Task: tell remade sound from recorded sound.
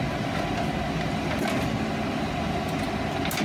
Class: recorded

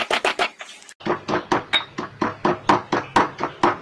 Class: recorded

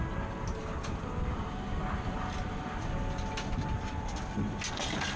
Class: recorded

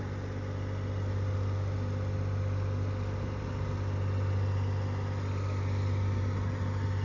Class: recorded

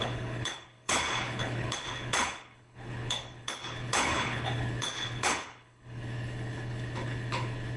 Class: remade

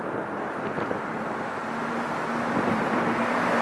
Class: recorded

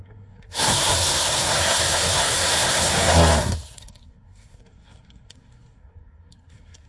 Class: remade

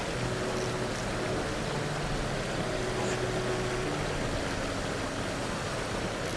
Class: recorded